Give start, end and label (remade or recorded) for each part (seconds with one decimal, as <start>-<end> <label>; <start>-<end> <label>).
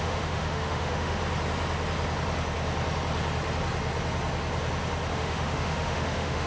0.0-1.2 remade; 1.2-5.1 recorded; 5.1-6.5 remade